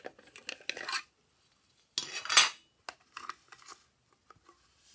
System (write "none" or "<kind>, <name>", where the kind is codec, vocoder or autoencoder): none